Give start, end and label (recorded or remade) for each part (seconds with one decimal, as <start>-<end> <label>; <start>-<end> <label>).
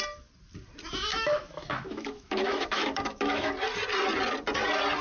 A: 0.0-1.1 recorded; 1.1-3.5 remade; 3.5-5.0 recorded